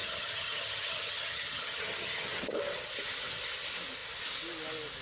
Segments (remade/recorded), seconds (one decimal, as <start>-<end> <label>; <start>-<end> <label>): 0.0-2.4 remade; 2.4-5.0 recorded